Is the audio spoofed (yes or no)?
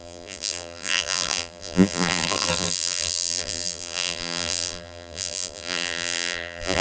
yes